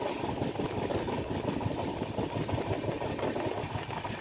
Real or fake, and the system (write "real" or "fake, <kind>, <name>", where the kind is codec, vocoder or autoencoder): real